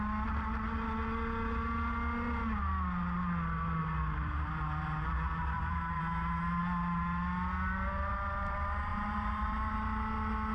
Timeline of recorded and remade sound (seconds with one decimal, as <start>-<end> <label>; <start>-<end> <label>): 0.0-3.8 recorded; 3.8-6.0 remade; 6.0-8.9 recorded; 8.9-9.7 remade; 9.7-10.5 recorded